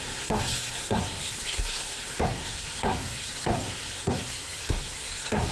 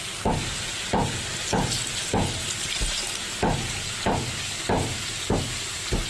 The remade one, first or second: first